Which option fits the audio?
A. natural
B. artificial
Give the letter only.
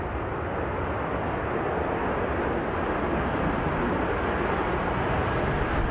A